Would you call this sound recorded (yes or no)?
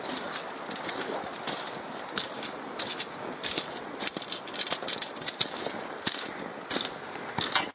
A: yes